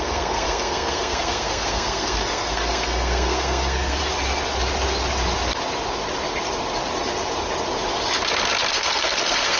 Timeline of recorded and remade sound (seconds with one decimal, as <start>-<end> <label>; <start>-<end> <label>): 0.0-4.0 remade; 4.0-8.7 recorded; 8.7-9.6 remade

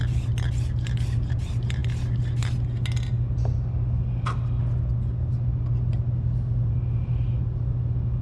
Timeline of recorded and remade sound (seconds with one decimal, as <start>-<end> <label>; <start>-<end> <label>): 0.0-8.2 recorded

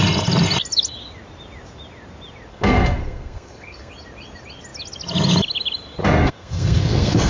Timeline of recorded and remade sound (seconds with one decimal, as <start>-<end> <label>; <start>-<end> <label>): 0.0-2.5 recorded; 2.5-3.9 remade; 3.9-6.0 recorded; 6.0-7.3 remade

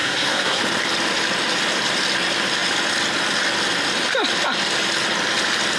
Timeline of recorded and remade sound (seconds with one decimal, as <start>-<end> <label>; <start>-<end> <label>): 0.0-0.6 remade; 0.6-5.8 recorded

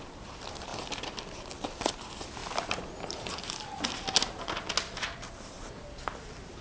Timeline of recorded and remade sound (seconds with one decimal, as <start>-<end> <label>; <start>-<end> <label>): 0.0-6.6 recorded

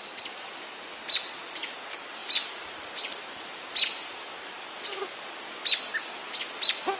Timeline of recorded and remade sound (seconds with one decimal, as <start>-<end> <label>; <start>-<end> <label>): 0.0-7.0 recorded

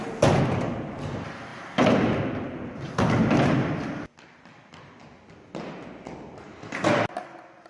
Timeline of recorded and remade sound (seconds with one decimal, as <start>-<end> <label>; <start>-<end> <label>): 0.0-7.7 recorded

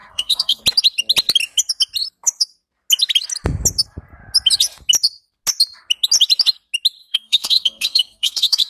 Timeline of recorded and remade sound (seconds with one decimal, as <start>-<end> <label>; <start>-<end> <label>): 0.0-0.6 remade; 0.6-7.0 recorded; 7.0-8.7 remade